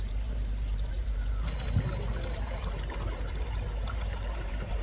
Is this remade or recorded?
remade